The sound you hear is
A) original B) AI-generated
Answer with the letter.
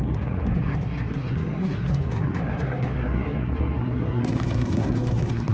B